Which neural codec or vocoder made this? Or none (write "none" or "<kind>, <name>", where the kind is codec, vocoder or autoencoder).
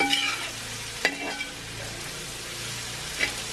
none